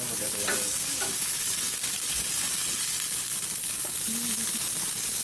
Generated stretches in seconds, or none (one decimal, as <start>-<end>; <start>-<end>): 0.0-2.1